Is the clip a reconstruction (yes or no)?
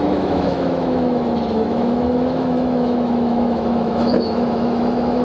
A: yes